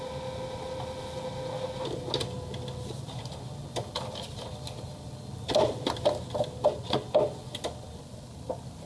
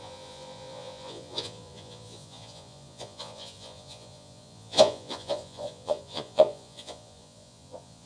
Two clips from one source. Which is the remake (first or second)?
second